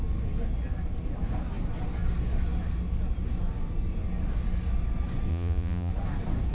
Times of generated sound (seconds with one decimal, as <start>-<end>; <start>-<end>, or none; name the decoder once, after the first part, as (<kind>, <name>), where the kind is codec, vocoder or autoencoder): 5.3-5.9 (vocoder, Vocos)